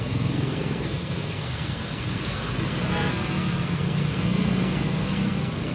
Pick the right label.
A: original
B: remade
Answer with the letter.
B